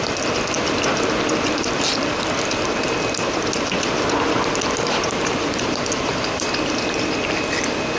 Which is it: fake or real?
fake